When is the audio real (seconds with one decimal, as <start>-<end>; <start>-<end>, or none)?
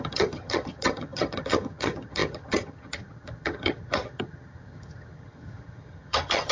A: none